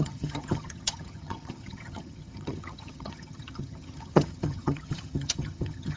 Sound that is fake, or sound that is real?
fake